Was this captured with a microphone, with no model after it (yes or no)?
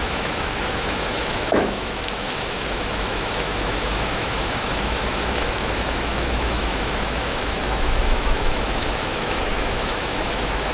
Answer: no